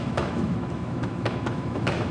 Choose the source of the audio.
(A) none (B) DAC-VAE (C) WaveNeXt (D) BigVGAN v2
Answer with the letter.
B